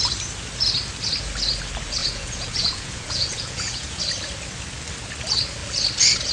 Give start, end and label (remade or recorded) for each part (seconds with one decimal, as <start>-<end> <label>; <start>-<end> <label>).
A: 0.0-2.0 recorded; 2.0-4.0 remade; 4.0-6.3 recorded